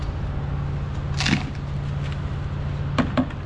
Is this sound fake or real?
real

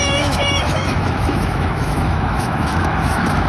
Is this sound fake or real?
fake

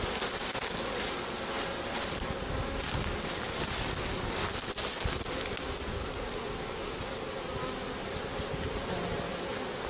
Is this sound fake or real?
real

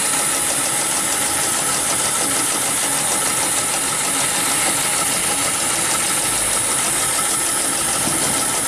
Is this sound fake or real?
real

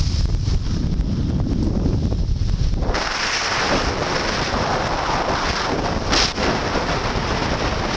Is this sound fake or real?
real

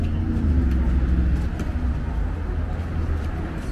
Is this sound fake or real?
real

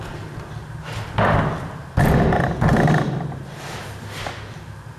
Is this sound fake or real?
real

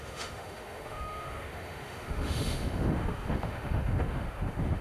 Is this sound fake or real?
fake